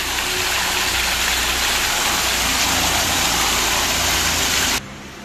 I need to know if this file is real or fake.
real